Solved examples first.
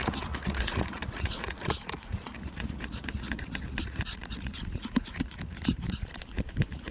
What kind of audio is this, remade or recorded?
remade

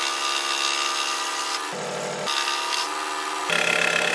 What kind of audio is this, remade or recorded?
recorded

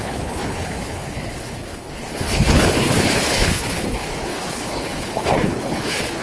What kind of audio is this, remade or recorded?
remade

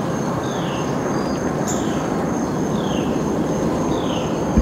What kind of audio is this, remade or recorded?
recorded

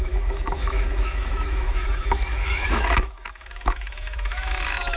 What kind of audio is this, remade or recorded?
remade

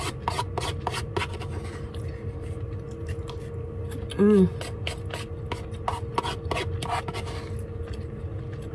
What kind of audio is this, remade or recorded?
recorded